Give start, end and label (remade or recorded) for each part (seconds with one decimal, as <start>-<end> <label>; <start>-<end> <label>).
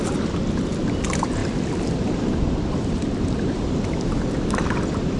0.0-5.2 remade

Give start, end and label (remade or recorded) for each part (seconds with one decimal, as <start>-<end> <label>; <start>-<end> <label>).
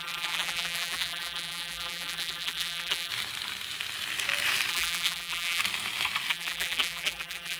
0.0-3.1 remade; 3.1-4.7 recorded; 4.7-5.6 remade; 5.6-6.3 recorded; 6.3-7.6 remade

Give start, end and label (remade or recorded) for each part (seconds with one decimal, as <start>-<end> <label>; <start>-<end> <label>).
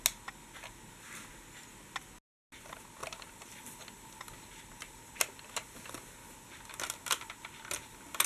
0.0-3.0 recorded; 3.0-3.6 remade; 3.6-8.3 recorded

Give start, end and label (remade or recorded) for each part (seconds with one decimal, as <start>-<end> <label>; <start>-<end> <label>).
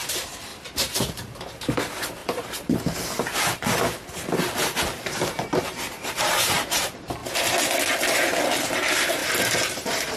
0.0-0.5 remade; 0.5-1.1 recorded; 1.1-7.2 remade; 7.2-8.1 recorded; 8.1-9.2 remade; 9.2-9.7 recorded; 9.7-10.2 remade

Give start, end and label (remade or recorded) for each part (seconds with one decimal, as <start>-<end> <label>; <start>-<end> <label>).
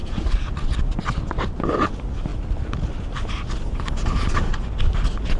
0.0-1.9 remade; 1.9-5.4 recorded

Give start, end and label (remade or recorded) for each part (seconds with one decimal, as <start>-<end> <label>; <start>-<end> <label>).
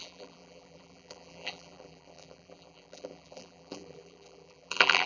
0.0-5.1 remade